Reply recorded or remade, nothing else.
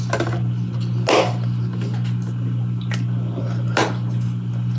recorded